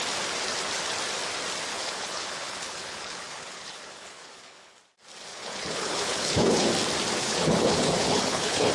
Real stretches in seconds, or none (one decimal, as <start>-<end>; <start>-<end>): 0.0-1.7; 4.8-5.3; 6.7-7.2